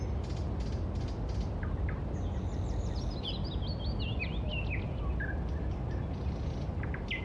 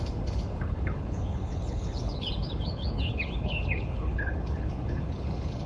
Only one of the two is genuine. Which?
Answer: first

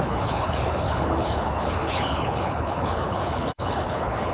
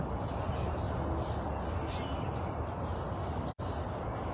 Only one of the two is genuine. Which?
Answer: second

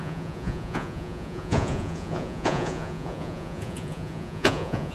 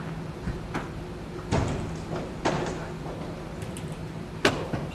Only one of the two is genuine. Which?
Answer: second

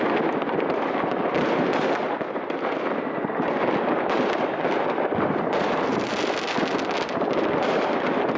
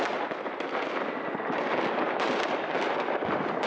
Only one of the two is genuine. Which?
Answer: second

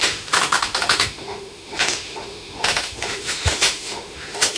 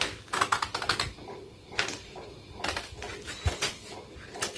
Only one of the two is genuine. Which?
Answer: second